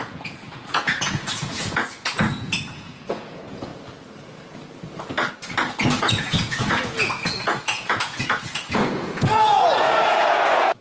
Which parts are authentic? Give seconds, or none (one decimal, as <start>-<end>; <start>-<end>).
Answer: 3.7-6.0